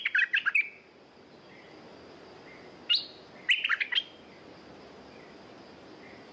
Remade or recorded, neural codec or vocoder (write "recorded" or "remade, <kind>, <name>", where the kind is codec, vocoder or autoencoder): recorded